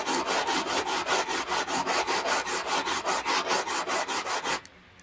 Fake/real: real